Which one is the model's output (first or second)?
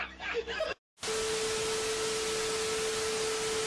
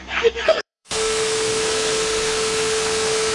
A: second